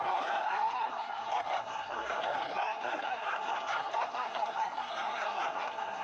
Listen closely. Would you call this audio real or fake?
fake